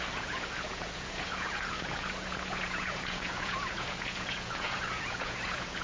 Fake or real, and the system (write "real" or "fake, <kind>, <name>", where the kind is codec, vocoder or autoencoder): fake, vocoder, Vocos